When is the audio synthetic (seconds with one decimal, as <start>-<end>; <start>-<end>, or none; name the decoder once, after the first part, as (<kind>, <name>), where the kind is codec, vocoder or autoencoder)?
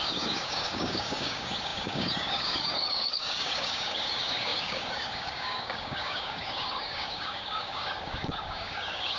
0.0-9.2 (codec, DAC)